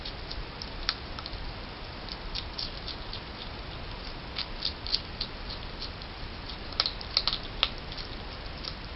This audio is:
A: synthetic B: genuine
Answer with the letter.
B